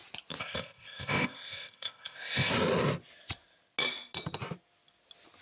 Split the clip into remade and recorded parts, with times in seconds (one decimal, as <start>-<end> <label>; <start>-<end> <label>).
0.0-0.4 recorded; 0.4-2.5 remade; 2.5-5.4 recorded